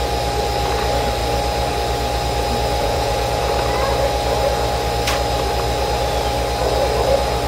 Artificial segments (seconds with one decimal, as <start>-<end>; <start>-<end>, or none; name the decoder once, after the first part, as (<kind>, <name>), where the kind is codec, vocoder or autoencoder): 2.8-3.4 (vocoder, Vocos)